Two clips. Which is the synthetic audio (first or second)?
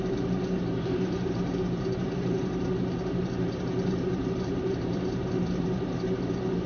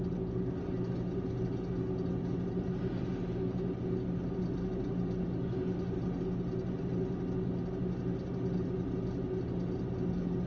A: first